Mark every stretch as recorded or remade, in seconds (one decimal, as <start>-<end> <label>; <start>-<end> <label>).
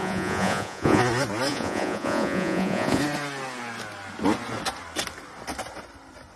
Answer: 0.0-1.0 remade; 1.0-1.5 recorded; 1.5-3.0 remade; 3.0-6.4 recorded